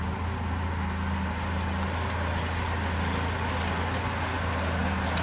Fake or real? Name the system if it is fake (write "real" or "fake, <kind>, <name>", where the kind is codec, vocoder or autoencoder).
real